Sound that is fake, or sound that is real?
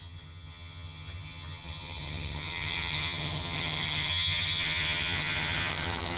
fake